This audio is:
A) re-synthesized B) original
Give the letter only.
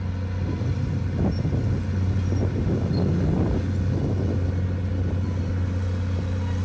B